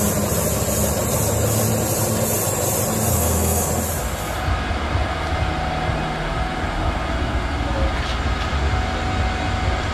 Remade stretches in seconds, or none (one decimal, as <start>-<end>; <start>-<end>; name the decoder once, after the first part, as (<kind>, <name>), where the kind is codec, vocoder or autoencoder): 3.1-3.7 (codec, SNAC)